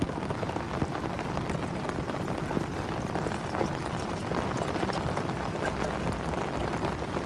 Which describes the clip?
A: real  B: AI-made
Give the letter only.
A